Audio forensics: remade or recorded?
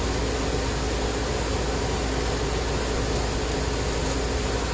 recorded